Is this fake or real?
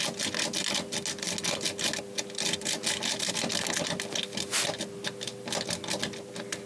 real